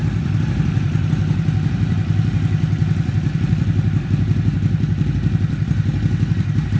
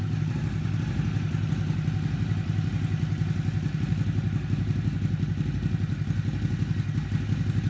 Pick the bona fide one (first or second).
second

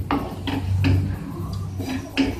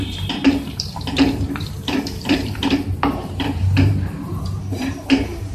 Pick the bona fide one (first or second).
first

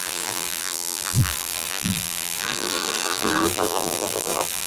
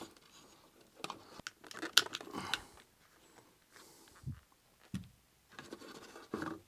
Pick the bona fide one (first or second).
second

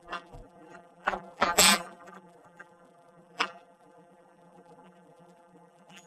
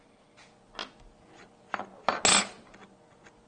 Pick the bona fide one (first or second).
second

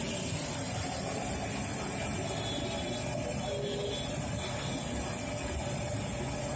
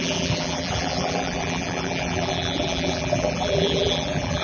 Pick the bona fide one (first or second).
first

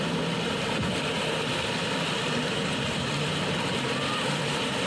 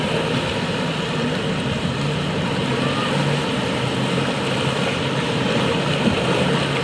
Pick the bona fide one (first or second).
second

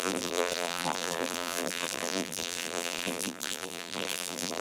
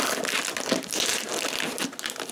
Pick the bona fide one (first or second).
second